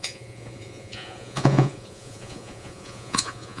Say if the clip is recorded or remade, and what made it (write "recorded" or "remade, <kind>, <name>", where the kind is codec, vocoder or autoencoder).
remade, vocoder, Vocos